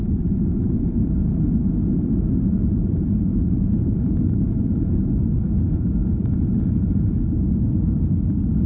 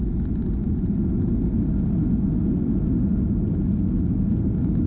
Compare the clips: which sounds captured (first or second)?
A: second